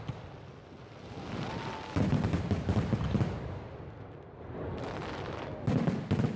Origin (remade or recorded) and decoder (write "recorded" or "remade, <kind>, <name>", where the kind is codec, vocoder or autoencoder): recorded